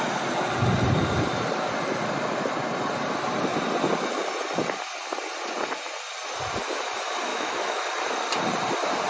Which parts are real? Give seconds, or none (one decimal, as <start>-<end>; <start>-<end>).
0.0-7.3; 7.9-9.1